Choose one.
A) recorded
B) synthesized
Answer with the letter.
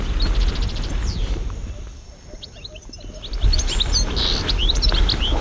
B